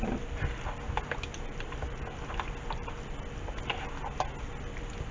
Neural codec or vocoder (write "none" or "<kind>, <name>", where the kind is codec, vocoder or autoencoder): none